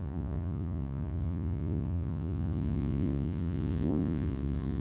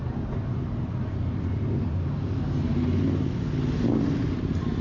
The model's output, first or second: first